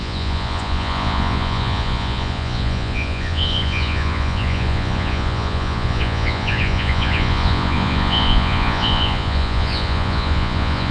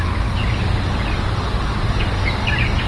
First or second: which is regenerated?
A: first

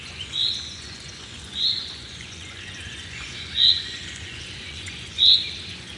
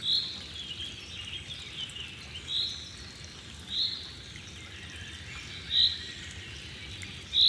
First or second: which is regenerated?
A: first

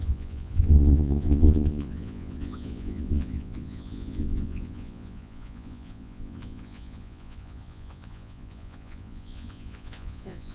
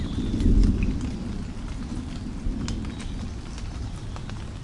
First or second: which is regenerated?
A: first